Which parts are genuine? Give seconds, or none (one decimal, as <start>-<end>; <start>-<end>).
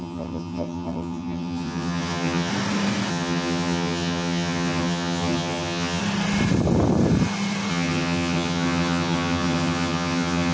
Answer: 2.5-3.1; 6.0-7.7